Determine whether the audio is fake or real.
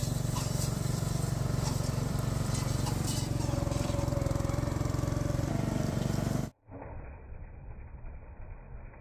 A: fake